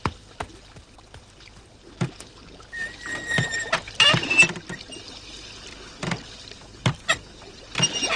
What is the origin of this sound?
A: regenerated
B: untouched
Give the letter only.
B